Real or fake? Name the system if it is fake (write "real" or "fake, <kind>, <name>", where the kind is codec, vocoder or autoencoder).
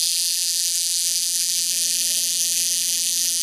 fake, vocoder, BigVGAN v2